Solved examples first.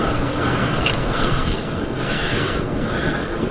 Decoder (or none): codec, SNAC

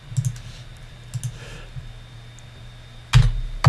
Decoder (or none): none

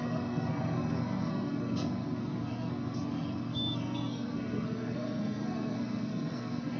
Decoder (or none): codec, SNAC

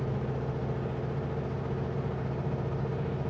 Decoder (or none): none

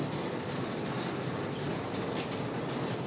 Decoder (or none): none